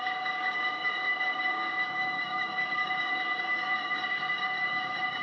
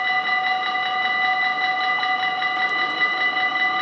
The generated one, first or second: first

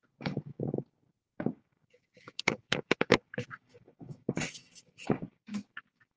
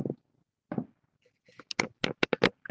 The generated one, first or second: first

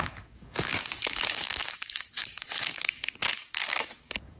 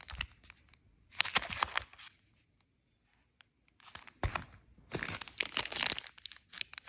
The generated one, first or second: first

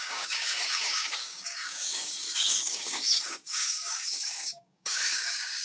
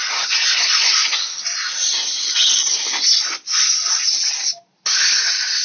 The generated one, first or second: first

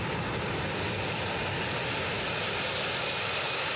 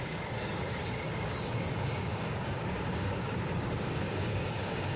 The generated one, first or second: second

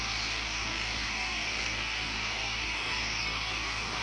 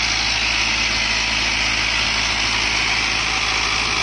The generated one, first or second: first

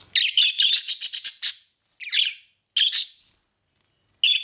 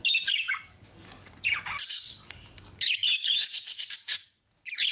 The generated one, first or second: second